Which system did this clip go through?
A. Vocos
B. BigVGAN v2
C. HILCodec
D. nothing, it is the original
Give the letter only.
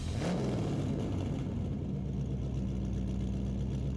D